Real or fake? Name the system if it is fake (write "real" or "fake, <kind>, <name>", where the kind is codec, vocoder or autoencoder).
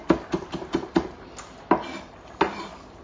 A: real